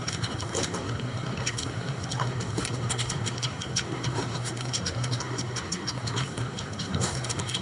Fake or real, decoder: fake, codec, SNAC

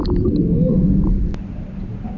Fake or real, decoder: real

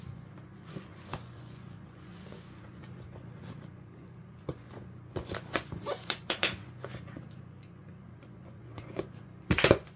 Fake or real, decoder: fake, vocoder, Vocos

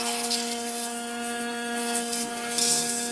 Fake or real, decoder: fake, codec, SNAC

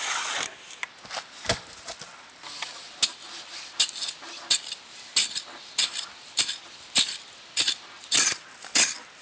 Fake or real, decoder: real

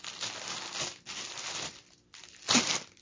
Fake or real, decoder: real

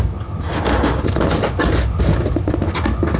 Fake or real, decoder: real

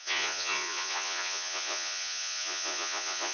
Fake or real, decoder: fake, vocoder, Vocos